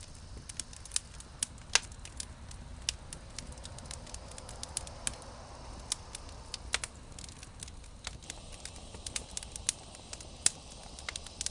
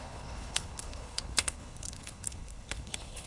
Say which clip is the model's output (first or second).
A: second